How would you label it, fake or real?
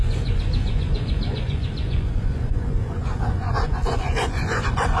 fake